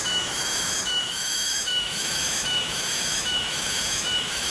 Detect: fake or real fake